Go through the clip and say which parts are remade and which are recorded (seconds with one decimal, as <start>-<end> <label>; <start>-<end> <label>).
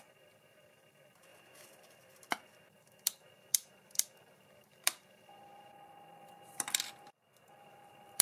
0.0-8.2 remade